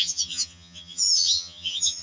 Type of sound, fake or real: fake